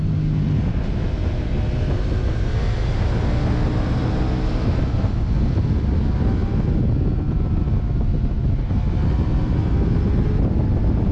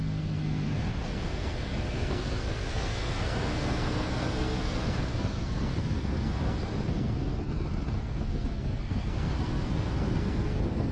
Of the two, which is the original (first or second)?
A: first